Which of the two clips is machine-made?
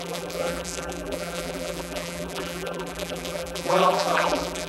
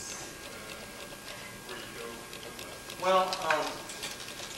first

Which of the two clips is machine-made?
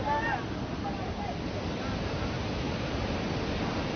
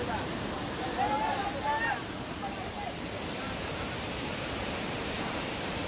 second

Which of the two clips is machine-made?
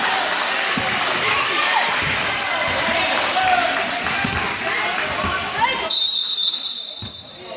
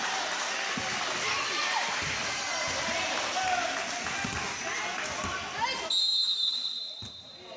first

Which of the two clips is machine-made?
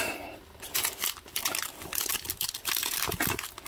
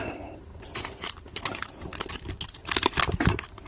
second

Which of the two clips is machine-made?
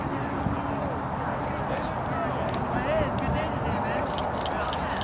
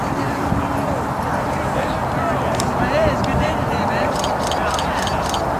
second